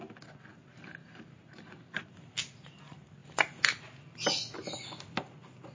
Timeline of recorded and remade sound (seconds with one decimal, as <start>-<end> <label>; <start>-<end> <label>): 0.0-1.0 recorded; 1.0-2.0 remade; 2.0-5.7 recorded